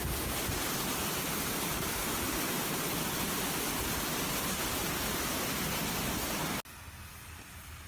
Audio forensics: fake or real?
real